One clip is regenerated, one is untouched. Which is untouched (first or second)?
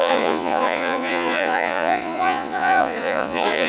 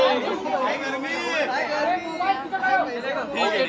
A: second